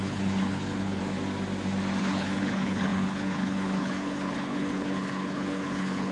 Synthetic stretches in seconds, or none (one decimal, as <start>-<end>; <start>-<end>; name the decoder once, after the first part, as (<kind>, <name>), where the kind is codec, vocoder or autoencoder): 0.0-1.0 (codec, HILCodec); 2.0-6.1